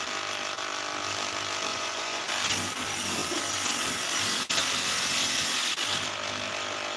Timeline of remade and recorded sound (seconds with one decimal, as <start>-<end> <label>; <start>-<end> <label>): 0.0-1.7 recorded; 1.7-2.3 remade; 2.3-7.0 recorded